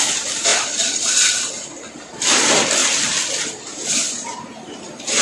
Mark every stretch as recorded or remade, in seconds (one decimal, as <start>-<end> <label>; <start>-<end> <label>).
0.0-0.5 recorded; 0.5-1.2 remade; 1.2-5.2 recorded